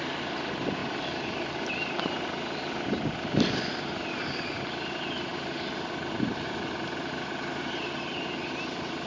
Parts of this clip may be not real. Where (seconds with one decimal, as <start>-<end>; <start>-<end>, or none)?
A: none